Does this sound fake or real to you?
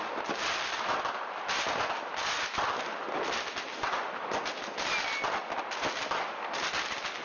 real